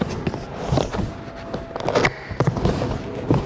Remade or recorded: recorded